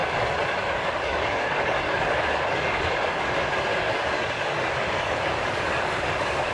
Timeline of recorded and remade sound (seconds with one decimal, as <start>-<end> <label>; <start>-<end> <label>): 0.0-3.3 remade; 3.3-3.7 recorded; 3.7-6.5 remade